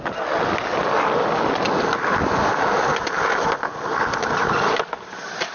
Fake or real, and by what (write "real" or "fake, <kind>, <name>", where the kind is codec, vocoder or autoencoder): real